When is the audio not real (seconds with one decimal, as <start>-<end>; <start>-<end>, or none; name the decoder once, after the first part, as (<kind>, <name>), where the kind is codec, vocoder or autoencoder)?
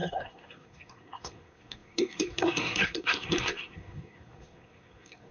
0.0-5.3 (codec, SNAC)